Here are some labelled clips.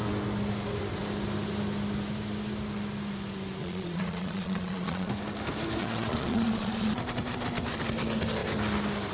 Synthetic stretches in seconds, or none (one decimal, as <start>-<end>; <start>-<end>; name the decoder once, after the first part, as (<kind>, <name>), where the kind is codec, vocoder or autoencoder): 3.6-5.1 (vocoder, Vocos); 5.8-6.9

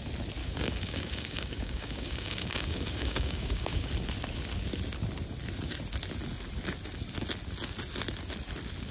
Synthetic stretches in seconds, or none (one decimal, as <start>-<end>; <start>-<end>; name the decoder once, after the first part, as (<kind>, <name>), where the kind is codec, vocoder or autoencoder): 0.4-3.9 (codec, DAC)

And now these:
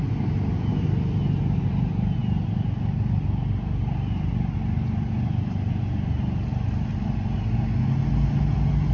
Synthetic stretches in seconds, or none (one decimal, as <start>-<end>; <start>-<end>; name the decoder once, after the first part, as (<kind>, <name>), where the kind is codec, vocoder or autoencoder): none

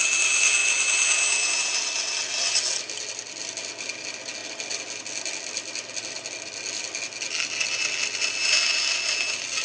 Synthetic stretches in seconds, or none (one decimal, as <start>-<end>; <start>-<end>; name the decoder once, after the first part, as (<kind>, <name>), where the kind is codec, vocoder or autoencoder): none